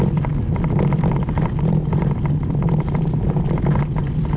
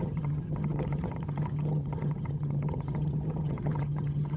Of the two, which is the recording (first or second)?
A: first